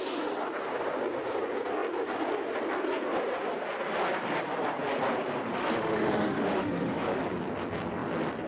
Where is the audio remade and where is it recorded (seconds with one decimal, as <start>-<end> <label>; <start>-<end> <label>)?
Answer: 0.0-5.6 recorded; 5.6-7.2 remade; 7.2-8.5 recorded